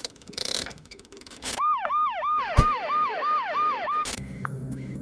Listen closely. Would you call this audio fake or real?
fake